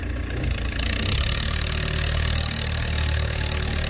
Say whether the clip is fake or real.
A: real